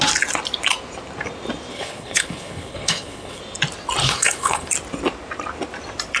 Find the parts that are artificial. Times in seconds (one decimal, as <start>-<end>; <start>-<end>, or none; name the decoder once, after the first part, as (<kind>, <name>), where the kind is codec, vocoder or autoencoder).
1.7-3.4 (codec, HILCodec); 4.0-4.7